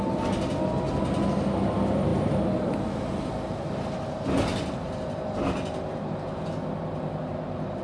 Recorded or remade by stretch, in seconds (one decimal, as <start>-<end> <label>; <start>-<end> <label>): 0.0-7.8 recorded